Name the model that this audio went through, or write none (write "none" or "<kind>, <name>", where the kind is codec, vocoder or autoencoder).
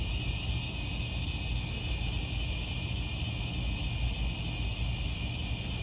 none